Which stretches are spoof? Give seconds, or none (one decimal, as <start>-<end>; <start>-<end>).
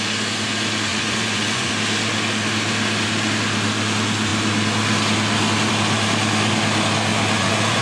0.9-1.7; 7.1-7.8